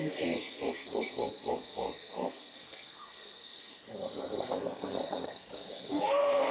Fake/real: fake